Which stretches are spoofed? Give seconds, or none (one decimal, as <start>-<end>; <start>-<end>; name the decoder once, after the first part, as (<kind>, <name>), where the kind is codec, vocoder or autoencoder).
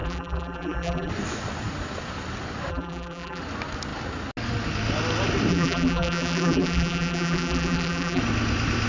0.0-1.1 (vocoder, BigVGAN v2); 2.7-3.4; 5.5-8.2